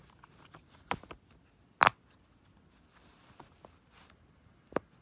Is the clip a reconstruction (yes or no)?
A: no